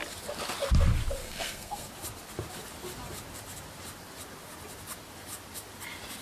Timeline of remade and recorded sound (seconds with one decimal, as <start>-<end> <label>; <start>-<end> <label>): 0.0-1.2 recorded; 1.2-1.9 remade; 1.9-6.2 recorded